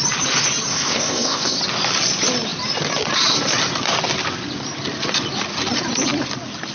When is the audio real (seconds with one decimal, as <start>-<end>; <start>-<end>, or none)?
0.0-0.7; 1.6-6.7